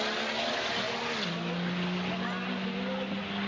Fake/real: real